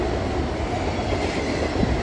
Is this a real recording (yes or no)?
yes